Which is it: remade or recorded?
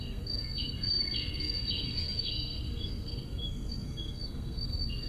remade